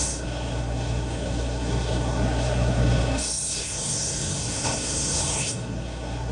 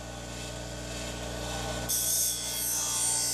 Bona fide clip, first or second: second